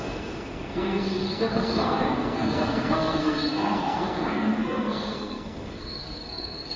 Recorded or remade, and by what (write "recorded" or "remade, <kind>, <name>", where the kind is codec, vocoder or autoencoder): remade, codec, SNAC